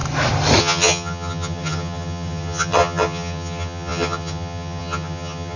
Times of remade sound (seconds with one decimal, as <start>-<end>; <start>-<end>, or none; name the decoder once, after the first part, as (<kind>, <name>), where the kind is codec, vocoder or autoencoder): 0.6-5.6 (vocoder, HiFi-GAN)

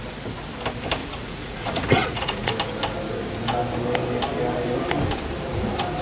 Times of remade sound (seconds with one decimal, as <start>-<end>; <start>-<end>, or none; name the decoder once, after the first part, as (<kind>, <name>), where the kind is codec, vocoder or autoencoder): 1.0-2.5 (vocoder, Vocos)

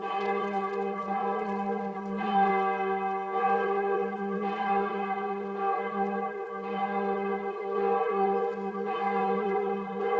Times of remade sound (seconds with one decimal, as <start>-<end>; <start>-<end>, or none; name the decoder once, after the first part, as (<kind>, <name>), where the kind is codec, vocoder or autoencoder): 0.0-2.5 (vocoder, Vocos); 3.4-10.2